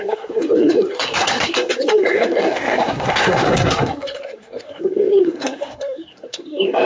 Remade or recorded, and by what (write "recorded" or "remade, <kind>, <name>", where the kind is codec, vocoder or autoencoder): remade, codec, SNAC